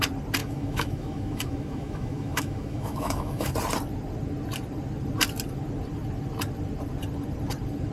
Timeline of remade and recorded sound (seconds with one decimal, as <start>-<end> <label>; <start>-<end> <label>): 0.0-0.4 recorded; 0.4-3.5 remade; 3.5-7.9 recorded